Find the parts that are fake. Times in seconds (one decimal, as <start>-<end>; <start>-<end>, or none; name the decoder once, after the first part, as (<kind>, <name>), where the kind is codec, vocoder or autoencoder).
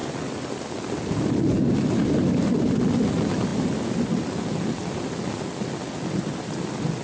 none